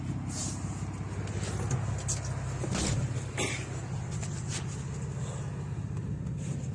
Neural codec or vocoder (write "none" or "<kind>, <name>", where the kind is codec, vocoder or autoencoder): none